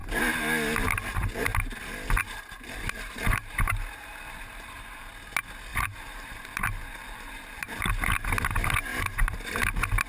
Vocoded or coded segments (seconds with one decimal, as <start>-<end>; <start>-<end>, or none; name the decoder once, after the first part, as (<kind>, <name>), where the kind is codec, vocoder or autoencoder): 2.2-5.1 (vocoder, BigVGAN v2); 5.7-7.9; 8.9-9.5